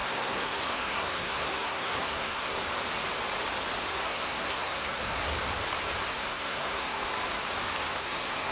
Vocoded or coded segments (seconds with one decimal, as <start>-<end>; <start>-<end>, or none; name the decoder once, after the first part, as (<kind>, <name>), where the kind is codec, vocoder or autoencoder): 0.0-2.6 (codec, SNAC); 3.9-5.3; 6.1-7.0; 8.0-8.5